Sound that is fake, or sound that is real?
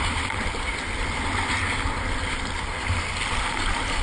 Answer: real